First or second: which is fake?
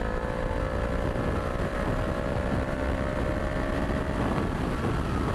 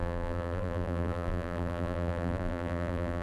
second